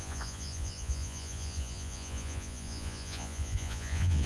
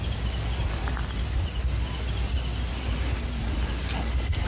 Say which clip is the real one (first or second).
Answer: second